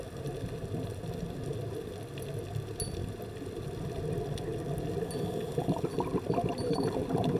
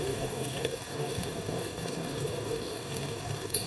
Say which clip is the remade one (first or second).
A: second